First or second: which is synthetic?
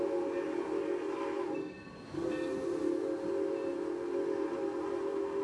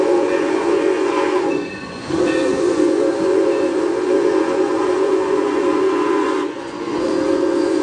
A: second